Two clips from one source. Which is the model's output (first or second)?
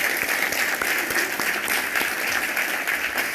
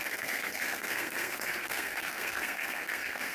second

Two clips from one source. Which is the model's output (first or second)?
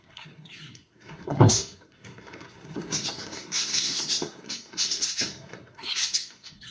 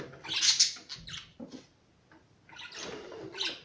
first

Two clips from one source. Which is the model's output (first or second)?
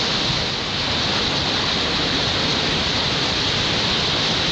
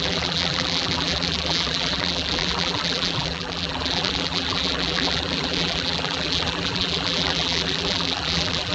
second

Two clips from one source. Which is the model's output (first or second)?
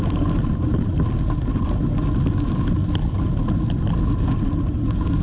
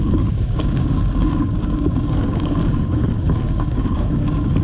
second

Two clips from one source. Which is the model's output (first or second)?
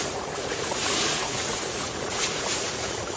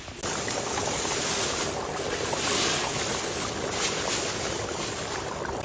first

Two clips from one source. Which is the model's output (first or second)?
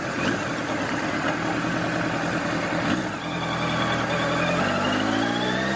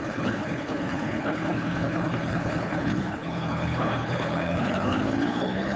second